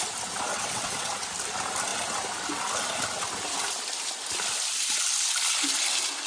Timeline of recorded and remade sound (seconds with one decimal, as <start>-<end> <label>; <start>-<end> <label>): 0.0-0.5 recorded; 0.5-1.1 remade; 1.1-6.3 recorded